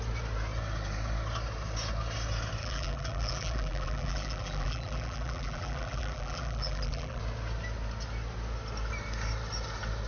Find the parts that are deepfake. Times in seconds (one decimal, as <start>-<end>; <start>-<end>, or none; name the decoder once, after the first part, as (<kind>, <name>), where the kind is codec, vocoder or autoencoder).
2.6-7.2 (vocoder, BigVGAN v2)